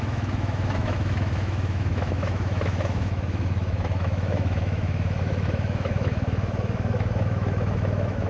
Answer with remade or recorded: remade